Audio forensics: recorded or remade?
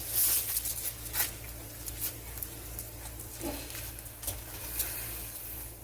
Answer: recorded